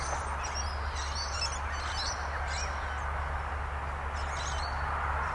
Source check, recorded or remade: recorded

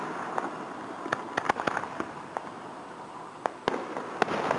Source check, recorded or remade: recorded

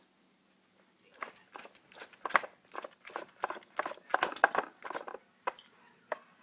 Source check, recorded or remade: recorded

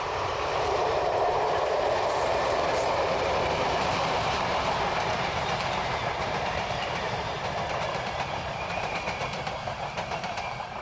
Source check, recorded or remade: remade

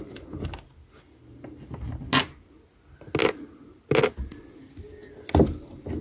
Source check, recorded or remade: recorded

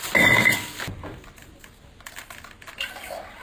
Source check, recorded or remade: recorded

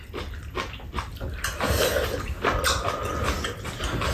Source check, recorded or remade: recorded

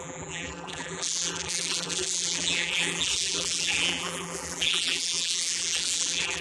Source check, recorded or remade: remade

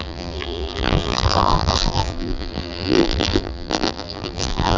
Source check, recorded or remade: remade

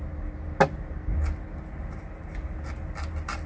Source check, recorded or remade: recorded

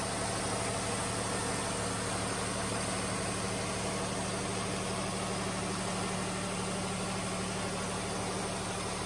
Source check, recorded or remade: recorded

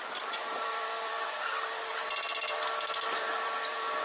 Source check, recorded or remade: remade